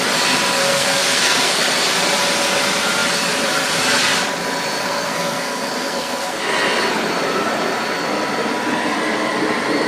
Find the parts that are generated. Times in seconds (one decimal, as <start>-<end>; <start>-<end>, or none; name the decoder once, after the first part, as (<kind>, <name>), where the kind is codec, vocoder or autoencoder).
0.6-1.6 (codec, SNAC); 4.8-6.4